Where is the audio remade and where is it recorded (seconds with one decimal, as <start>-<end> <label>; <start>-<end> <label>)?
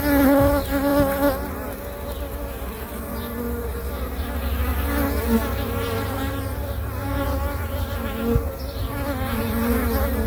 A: 0.0-10.3 recorded